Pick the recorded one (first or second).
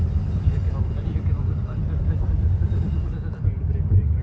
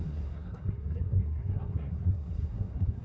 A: first